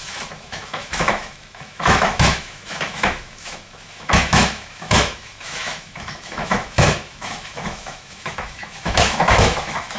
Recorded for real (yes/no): no